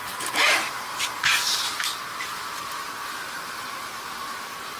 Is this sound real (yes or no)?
no